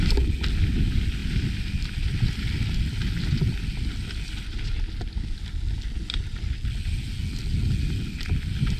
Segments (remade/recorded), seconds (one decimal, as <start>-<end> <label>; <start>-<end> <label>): 0.0-8.8 recorded